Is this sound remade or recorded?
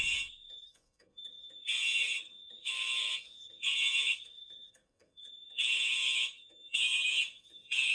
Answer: remade